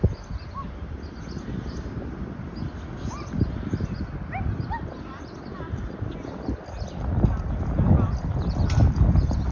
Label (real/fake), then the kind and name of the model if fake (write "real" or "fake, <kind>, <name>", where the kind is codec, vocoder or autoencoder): real